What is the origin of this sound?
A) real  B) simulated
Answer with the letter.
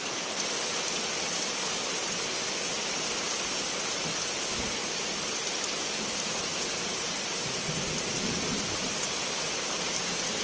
A